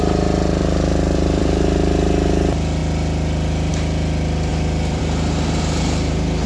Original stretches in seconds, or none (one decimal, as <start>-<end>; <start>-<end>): 0.0-0.6; 1.6-4.5; 5.0-6.5